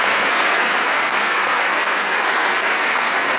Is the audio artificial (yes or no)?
yes